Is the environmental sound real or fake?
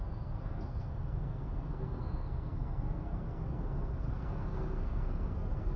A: fake